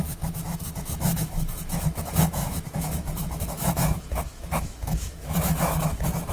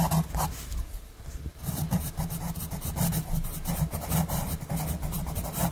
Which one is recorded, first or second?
second